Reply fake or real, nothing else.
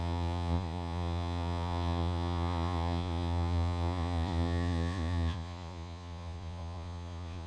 fake